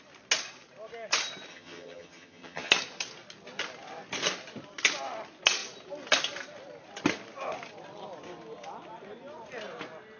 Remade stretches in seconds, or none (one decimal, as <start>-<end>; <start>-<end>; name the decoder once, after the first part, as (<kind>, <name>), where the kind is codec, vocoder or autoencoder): 1.5-2.7 (vocoder, HiFi-GAN)